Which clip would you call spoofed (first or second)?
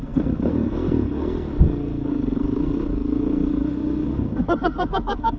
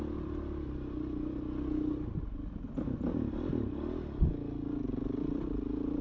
first